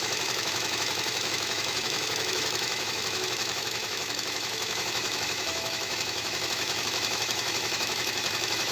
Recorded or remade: remade